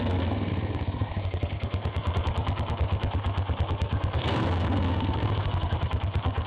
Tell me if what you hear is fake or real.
fake